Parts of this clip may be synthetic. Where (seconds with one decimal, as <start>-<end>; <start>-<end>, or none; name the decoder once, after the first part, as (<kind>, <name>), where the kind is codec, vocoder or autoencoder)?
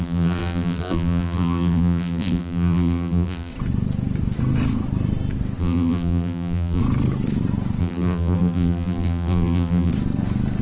0.0-3.5 (vocoder, BigVGAN v2); 5.6-6.8; 7.8-9.9